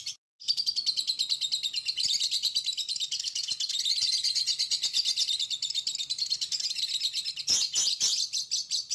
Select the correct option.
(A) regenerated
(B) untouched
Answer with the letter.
B